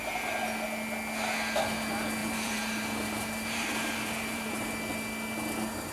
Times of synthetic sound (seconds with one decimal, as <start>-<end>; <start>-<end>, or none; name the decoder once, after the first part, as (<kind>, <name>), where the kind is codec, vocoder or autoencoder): 2.2-4.7 (vocoder, BigVGAN v2)